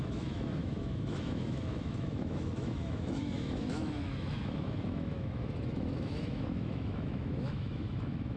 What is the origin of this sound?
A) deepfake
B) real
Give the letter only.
A